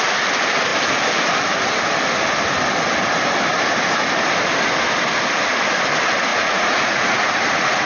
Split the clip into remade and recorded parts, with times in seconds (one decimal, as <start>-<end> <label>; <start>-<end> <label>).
0.0-6.3 recorded; 6.3-7.9 remade